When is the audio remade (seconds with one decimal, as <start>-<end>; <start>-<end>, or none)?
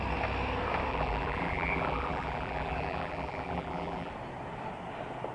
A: 0.9-4.1